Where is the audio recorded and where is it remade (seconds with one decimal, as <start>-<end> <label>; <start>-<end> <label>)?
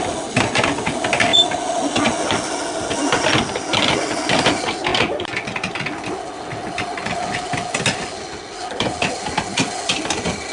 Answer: 0.0-10.5 recorded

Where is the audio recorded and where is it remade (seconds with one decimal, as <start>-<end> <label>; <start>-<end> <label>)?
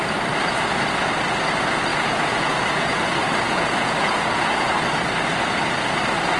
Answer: 0.0-1.9 recorded; 1.9-4.7 remade; 4.7-6.4 recorded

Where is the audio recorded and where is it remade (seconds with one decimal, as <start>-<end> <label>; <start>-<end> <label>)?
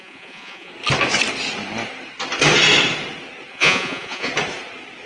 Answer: 0.0-0.7 remade; 0.7-3.5 recorded; 3.5-4.3 remade; 4.3-5.1 recorded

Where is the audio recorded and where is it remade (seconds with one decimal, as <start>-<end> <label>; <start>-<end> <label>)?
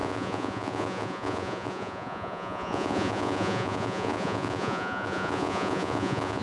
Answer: 0.0-6.4 remade